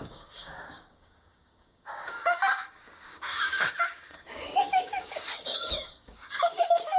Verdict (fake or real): fake